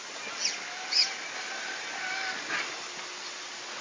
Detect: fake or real real